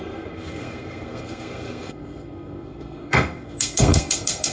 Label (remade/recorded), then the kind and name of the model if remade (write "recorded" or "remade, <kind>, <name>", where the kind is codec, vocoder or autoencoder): remade, codec, SNAC